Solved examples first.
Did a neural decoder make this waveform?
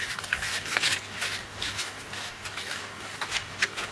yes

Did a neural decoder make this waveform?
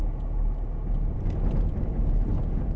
no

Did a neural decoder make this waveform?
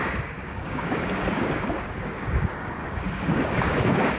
yes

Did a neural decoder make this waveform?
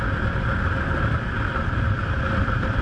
no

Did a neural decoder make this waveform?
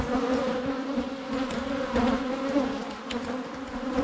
no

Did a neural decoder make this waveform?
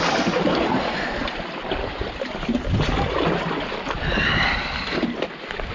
no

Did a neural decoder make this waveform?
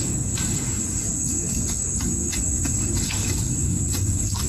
yes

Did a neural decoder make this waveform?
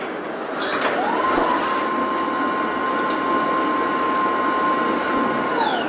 no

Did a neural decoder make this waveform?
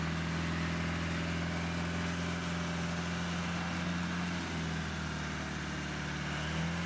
no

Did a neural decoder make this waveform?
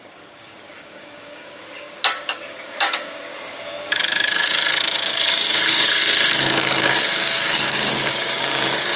yes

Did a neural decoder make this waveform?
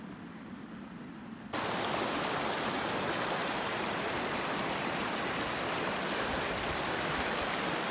no